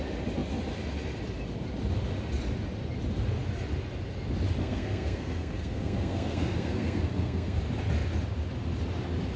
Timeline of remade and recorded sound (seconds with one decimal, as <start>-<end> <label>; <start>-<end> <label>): 0.0-4.6 recorded; 4.6-7.6 remade; 7.6-9.4 recorded